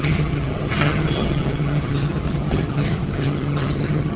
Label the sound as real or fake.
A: fake